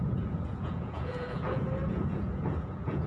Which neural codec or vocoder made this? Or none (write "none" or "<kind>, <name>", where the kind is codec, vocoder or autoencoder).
vocoder, Vocos